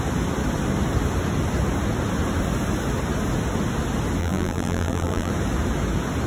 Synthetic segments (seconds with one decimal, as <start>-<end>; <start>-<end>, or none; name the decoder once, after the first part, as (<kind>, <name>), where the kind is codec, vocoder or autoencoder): 4.2-5.3 (vocoder, BigVGAN v2)